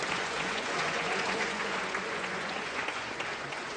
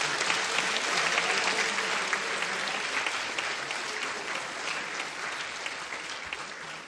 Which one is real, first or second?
second